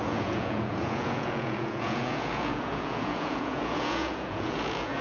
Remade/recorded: remade